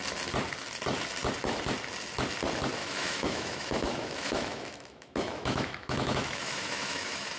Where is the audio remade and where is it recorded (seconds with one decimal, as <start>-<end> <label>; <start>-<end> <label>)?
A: 0.0-2.8 recorded; 2.8-7.4 remade